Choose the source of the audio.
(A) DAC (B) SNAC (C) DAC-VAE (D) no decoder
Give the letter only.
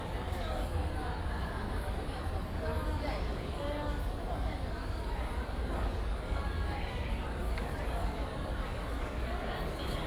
A